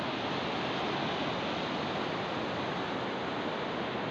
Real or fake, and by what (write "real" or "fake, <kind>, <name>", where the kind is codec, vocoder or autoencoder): real